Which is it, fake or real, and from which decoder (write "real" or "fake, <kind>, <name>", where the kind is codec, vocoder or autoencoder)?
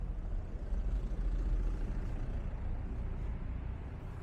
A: real